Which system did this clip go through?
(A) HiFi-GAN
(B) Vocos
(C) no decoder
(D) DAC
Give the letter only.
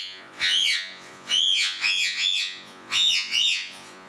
B